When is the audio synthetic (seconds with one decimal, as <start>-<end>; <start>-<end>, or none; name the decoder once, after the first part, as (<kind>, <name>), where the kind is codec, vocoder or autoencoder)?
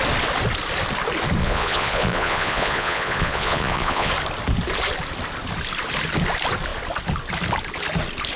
1.4-4.1 (vocoder, Vocos)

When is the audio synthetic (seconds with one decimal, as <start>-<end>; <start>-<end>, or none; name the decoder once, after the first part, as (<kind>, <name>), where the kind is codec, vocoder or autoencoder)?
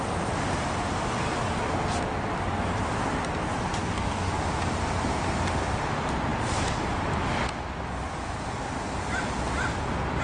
3.8-4.3 (codec, DAC)